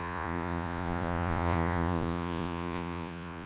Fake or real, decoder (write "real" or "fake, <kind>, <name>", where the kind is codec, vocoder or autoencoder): fake, vocoder, Vocos